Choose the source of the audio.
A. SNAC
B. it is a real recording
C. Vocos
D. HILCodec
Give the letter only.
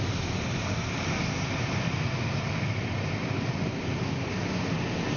B